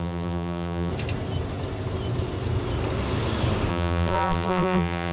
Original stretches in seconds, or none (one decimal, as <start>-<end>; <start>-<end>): 0.9-3.7